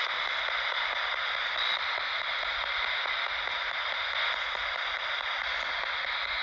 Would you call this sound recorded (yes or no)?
yes